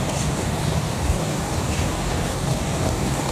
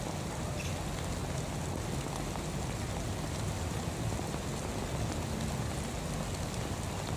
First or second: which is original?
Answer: second